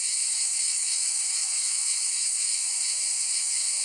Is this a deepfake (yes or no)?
yes